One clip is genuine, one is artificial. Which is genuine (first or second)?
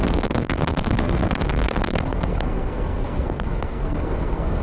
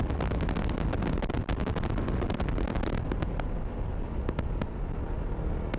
second